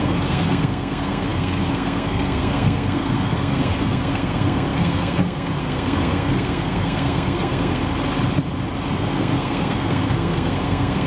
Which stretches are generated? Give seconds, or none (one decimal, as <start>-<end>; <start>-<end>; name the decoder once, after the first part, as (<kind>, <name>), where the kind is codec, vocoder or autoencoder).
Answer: 0.0-7.8 (codec, SNAC); 8.9-11.1